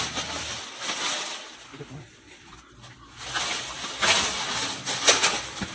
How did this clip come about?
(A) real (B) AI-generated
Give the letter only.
A